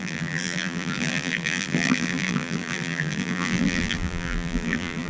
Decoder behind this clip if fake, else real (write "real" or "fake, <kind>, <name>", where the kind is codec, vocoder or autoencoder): fake, vocoder, BigVGAN v2